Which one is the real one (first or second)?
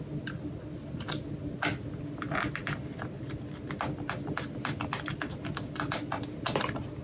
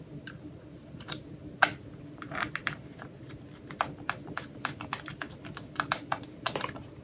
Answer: first